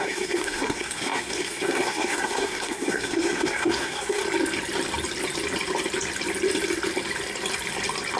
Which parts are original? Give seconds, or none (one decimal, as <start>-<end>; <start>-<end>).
4.2-8.2